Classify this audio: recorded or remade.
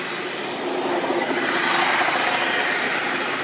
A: recorded